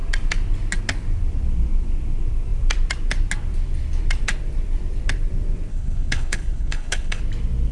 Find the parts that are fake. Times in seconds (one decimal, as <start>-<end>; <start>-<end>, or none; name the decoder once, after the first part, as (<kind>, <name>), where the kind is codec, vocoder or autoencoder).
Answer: 5.7-7.2 (codec, HILCodec)